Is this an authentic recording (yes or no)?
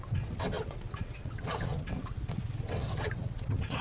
no